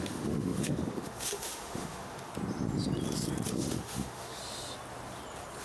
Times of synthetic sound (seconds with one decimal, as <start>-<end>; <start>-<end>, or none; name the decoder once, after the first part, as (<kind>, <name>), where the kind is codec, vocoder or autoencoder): 0.0-2.3 (autoencoder, DAC-VAE); 3.5-4.4